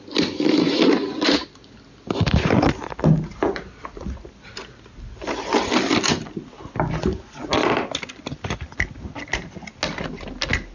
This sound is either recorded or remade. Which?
recorded